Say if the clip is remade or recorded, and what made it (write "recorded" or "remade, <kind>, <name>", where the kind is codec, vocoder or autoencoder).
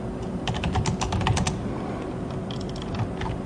recorded